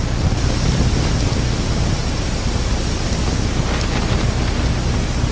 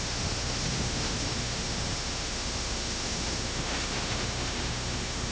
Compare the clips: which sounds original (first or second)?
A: first